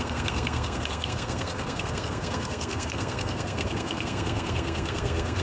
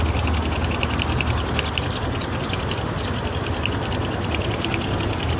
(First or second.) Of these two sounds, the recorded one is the second